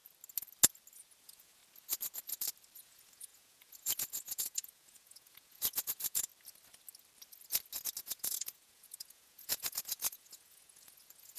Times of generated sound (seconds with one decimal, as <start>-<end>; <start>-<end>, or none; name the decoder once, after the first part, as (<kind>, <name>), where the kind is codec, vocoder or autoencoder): 1.2-1.6 (vocoder, Vocos); 2.8-6.3; 8.0-11.4